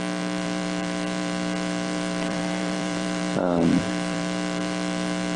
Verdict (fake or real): fake